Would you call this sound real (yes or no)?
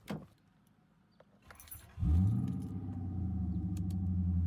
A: yes